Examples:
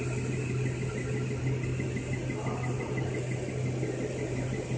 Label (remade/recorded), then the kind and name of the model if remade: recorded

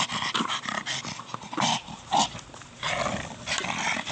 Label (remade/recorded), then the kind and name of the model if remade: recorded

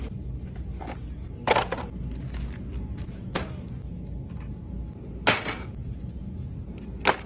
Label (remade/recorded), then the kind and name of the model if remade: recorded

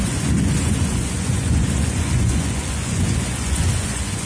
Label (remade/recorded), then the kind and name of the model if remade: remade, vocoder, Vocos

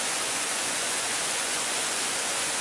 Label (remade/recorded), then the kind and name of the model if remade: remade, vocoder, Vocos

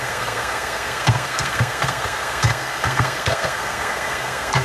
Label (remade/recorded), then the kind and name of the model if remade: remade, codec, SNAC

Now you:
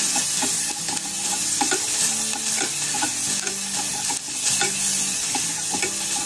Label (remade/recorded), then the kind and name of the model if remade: recorded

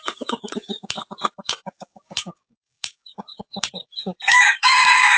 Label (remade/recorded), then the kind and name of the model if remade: remade, codec, DAC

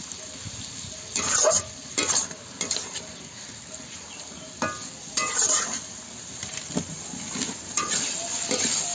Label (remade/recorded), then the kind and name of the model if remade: recorded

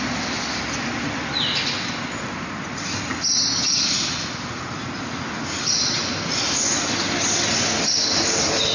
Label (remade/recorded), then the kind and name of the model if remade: recorded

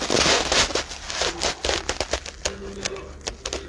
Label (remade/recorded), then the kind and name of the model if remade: recorded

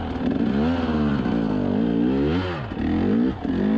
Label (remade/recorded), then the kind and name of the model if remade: recorded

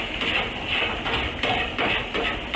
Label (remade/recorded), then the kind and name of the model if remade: recorded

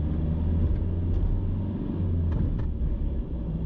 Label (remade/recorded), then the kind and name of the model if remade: recorded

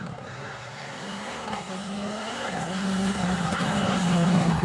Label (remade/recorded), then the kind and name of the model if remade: remade, codec, SNAC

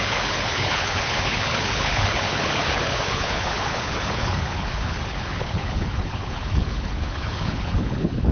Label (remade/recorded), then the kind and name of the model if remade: remade, codec, HILCodec